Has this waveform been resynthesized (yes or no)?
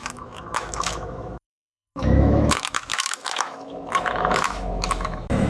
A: yes